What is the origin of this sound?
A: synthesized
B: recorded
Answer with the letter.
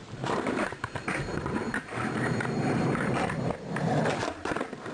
A